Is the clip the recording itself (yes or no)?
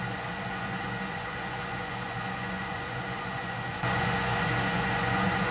no